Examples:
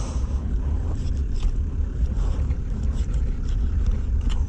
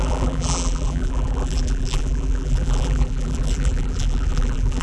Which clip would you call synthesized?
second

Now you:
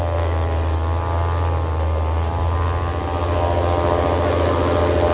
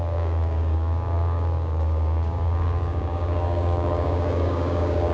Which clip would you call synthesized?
second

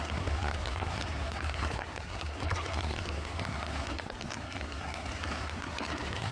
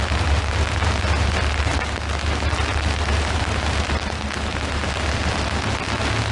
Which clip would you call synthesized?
first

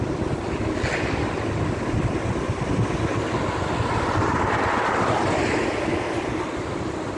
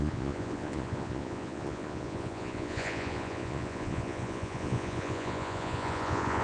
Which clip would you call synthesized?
second